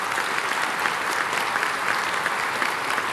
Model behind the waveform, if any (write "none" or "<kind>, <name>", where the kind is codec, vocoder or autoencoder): none